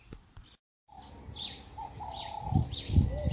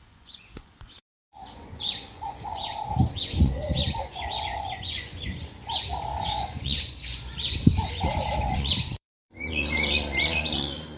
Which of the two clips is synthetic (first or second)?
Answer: second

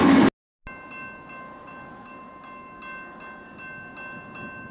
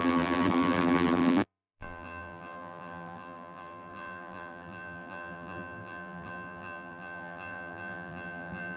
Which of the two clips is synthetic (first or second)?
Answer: second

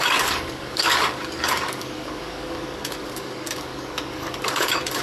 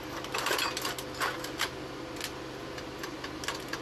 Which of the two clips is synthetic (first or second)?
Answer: first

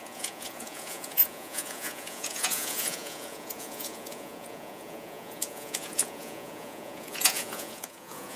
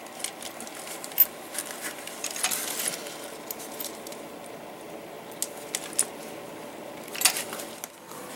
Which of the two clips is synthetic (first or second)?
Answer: first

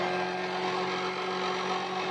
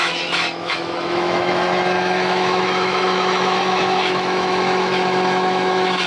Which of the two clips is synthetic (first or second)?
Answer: second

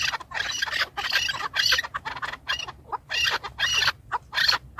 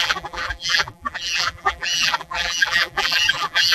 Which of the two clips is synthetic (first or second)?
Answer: second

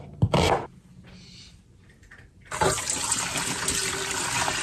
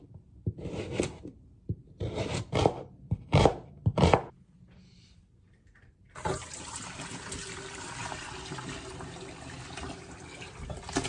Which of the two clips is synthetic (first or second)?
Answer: second